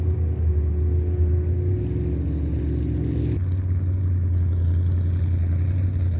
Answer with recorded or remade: recorded